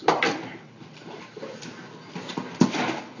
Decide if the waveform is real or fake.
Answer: real